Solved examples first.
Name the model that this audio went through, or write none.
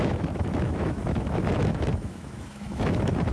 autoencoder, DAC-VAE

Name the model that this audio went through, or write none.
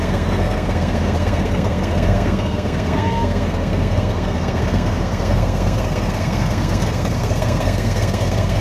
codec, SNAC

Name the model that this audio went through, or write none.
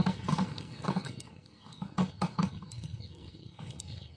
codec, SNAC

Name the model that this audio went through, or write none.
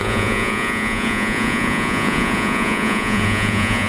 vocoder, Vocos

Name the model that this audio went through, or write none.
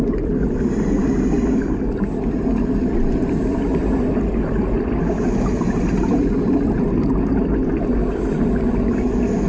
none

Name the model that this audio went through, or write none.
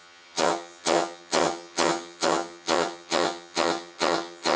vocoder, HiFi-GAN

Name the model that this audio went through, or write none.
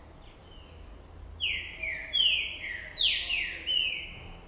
none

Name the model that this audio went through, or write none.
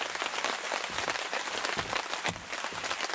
none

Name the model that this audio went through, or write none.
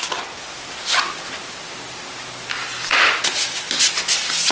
none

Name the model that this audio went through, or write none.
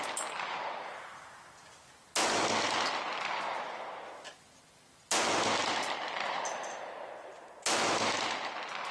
none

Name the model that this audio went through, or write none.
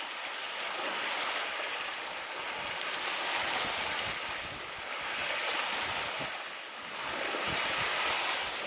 none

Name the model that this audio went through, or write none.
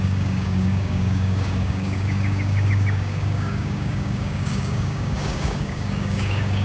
codec, DAC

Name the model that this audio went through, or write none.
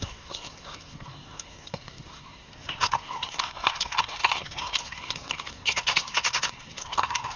codec, SNAC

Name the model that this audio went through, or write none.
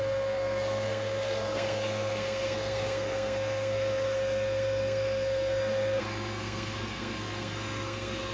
codec, SNAC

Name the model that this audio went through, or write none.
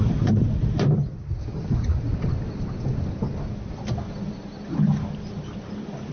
none